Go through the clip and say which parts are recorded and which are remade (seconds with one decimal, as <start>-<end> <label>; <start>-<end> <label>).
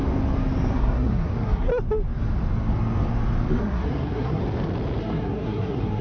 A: 0.0-0.7 recorded; 0.7-1.7 remade; 1.7-3.6 recorded; 3.6-4.4 remade; 4.4-5.0 recorded; 5.0-6.0 remade